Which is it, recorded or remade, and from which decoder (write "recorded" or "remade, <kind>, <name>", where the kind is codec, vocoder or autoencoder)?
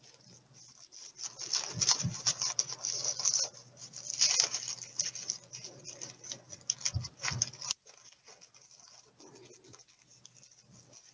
recorded